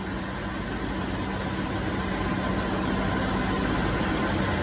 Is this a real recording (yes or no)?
yes